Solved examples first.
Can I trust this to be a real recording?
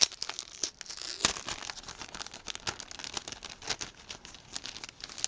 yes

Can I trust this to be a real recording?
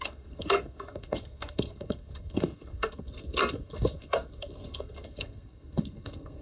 no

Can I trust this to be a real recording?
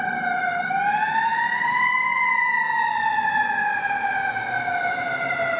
yes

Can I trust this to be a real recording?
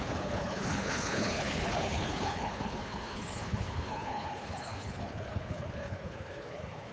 no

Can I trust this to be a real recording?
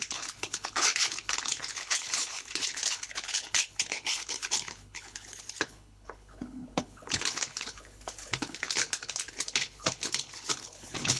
no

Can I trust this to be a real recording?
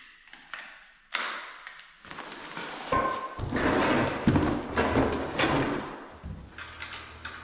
yes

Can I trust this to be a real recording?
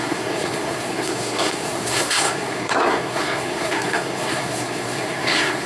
no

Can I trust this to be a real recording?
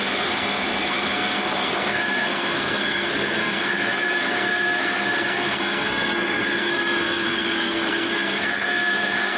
no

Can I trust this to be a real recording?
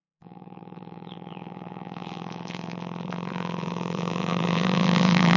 no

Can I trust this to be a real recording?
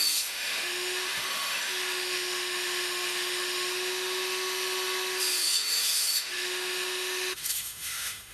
no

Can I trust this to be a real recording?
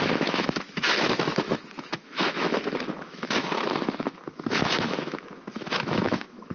no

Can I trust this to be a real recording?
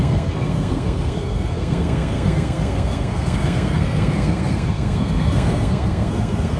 no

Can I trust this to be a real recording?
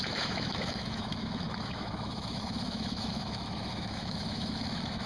no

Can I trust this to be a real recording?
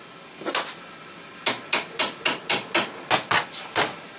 yes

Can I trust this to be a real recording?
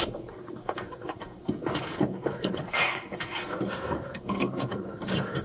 no